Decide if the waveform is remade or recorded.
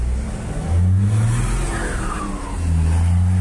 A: recorded